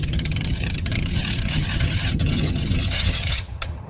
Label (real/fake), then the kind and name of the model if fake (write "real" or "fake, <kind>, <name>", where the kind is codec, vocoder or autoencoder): fake, vocoder, HiFi-GAN